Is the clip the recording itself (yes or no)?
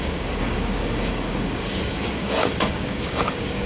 no